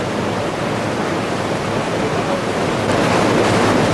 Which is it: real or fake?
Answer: real